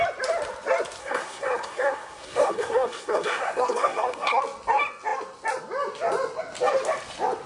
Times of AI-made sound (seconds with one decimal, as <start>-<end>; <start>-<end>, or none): 1.0-4.4